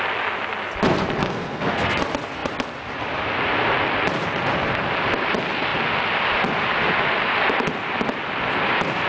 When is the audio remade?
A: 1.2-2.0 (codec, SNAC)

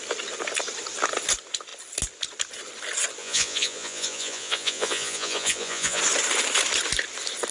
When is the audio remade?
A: 3.2-6.0 (vocoder, Vocos)

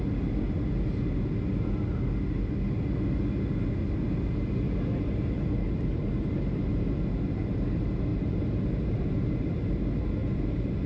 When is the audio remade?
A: 8.1-9.4 (vocoder, BigVGAN v2)

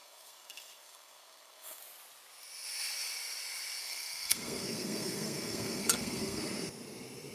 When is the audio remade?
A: 0.0-1.8 (codec, SNAC); 3.8-6.4

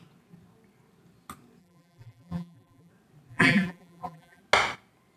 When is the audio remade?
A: 1.6-2.9 (vocoder, BigVGAN v2); 3.3-4.4

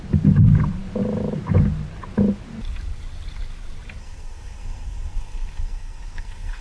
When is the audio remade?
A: 4.0-6.6 (codec, SNAC)

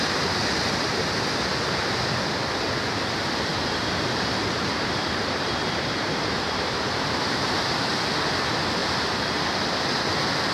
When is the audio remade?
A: 3.5-7.9 (vocoder, BigVGAN v2)

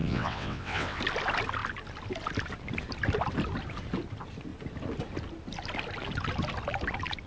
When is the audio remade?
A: 0.0-1.0 (vocoder, WaveNeXt)